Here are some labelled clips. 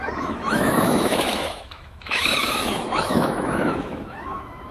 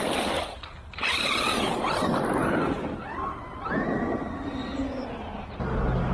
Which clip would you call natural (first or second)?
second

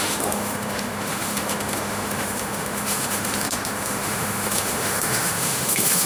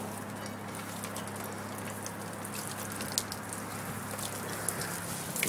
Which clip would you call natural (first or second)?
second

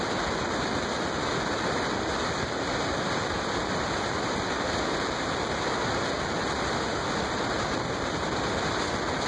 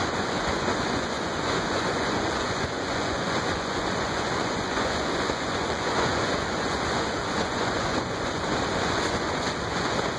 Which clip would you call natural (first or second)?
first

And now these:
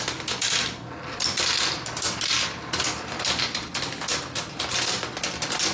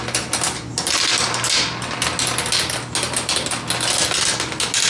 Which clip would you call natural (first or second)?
second